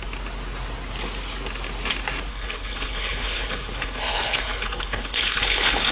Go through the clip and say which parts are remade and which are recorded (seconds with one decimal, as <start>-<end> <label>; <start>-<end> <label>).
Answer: 0.0-2.3 recorded; 2.3-5.9 remade